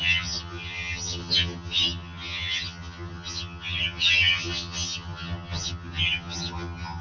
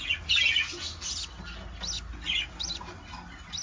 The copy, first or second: first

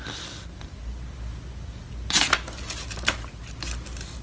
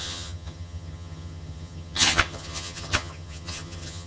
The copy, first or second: second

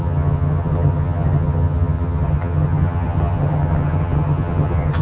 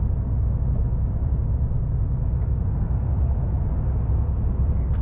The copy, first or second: first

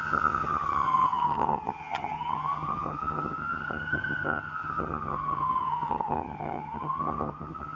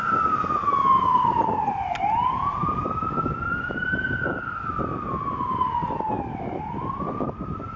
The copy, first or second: first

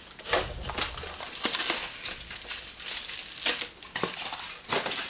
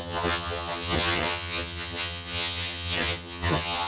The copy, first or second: second